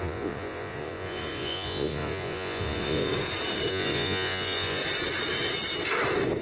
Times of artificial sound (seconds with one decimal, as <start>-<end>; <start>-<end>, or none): 0.0-3.1; 3.7-4.8